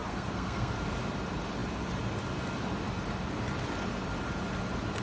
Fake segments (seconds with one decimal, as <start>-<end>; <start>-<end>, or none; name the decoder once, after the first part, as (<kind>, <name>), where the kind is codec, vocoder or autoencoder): 0.0-0.7 (codec, SNAC)